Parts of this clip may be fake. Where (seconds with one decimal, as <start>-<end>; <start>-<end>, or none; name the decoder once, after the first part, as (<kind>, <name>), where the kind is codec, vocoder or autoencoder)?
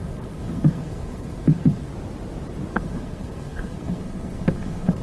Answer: 0.0-1.9 (codec, SNAC); 2.7-5.0